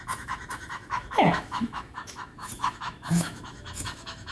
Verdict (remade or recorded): remade